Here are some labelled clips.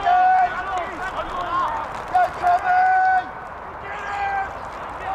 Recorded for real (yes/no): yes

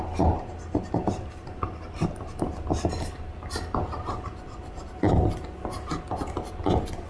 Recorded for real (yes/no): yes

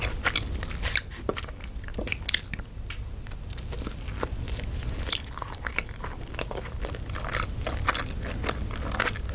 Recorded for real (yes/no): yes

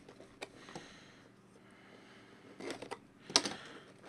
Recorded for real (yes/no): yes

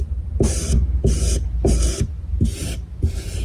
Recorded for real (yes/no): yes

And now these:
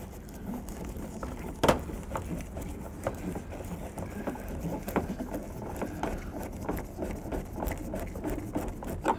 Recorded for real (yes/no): yes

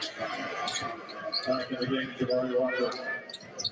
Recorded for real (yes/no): yes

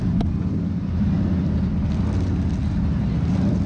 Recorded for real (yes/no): yes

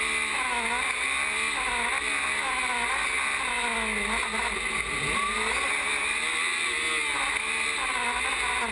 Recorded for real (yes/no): yes